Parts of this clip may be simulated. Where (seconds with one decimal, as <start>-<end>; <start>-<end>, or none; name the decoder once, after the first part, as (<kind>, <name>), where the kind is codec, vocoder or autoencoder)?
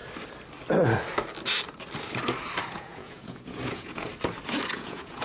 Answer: 2.7-4.1 (vocoder, Vocos); 4.7-5.2